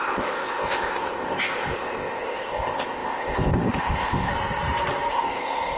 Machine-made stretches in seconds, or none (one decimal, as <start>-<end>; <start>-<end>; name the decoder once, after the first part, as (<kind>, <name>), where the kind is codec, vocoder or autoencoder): 0.0-4.3 (codec, ZipCodec); 5.1-5.8